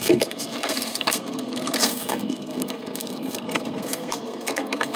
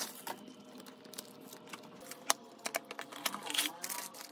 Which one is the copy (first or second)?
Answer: first